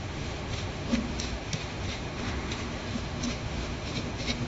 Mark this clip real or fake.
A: fake